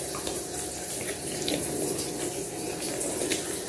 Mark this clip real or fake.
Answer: real